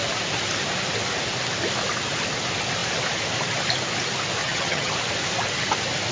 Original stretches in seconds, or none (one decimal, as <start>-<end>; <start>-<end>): 0.0-4.4; 4.9-6.1